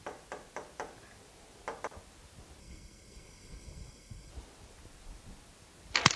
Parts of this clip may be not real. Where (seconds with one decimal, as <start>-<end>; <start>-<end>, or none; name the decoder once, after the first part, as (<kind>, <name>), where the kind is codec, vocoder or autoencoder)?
2.6-4.3 (codec, SNAC)